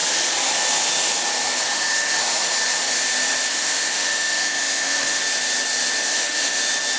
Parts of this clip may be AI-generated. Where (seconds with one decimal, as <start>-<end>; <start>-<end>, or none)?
1.7-2.2; 3.5-5.2; 6.1-6.6